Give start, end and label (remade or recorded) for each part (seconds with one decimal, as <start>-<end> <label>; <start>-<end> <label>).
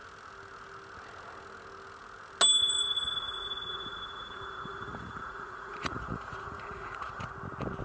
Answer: 0.0-2.6 recorded; 2.6-7.3 remade; 7.3-7.8 recorded